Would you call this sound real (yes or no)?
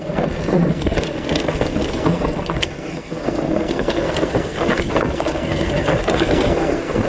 no